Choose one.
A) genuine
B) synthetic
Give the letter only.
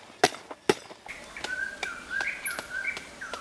A